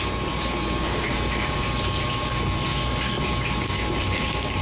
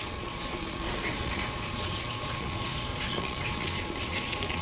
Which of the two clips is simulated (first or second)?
second